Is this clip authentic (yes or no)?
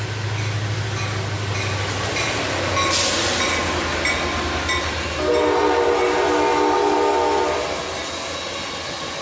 yes